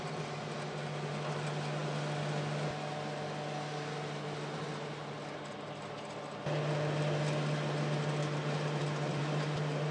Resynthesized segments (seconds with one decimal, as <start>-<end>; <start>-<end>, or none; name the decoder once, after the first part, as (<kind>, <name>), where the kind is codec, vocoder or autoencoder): 8.2-9.9 (vocoder, BigVGAN v2)